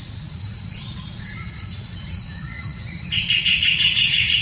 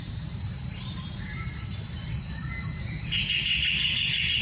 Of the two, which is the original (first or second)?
second